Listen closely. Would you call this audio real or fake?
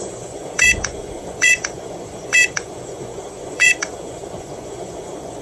fake